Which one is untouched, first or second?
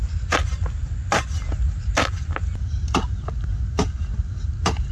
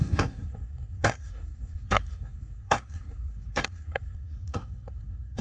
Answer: first